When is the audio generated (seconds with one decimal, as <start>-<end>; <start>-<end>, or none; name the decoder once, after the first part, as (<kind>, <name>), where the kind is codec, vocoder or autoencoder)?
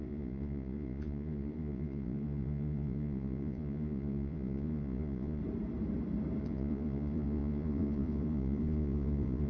0.0-5.4 (vocoder, Vocos); 6.4-9.5